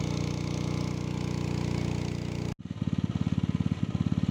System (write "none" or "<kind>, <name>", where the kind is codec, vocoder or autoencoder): none